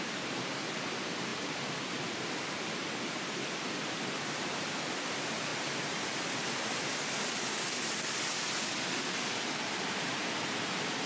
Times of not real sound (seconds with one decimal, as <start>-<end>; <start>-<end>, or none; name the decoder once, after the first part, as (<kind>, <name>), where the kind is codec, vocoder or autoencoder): 0.0-5.5 (vocoder, BigVGAN v2); 9.0-11.1